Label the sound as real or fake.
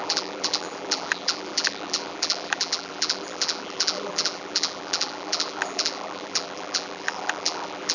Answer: fake